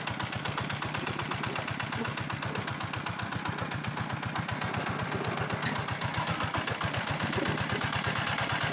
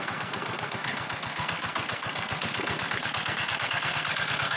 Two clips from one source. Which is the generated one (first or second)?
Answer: second